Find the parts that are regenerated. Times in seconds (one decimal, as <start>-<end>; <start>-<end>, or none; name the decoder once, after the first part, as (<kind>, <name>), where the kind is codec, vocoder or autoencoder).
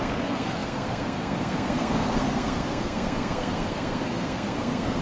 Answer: 0.0-5.0 (codec, SNAC)